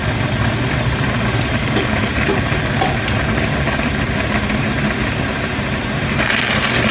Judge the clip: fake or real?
real